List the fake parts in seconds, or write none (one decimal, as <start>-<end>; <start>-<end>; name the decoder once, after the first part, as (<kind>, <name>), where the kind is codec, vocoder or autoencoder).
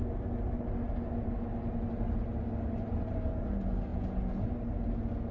3.9-4.5 (vocoder, Vocos)